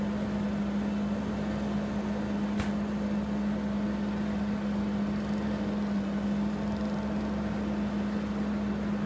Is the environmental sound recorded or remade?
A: recorded